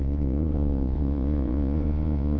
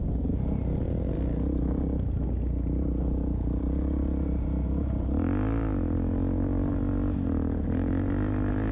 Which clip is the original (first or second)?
second